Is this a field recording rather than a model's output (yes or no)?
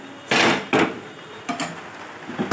yes